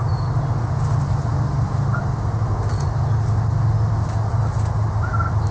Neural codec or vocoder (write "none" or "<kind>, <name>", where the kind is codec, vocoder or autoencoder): none